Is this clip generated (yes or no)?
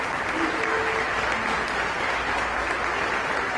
no